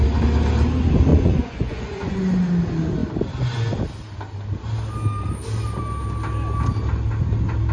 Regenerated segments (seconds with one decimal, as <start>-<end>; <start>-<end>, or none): 1.1-2.2